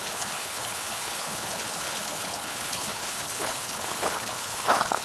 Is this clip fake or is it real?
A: fake